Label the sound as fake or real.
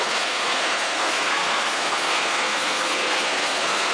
fake